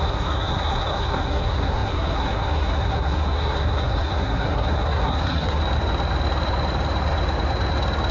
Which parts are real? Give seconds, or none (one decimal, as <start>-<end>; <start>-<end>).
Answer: 5.6-8.1